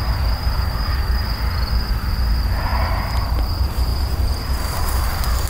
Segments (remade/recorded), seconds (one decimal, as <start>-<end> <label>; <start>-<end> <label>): 0.0-1.2 remade; 1.2-1.9 recorded; 1.9-5.5 remade